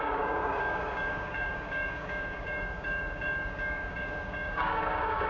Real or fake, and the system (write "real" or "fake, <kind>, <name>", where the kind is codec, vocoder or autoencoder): fake, codec, DAC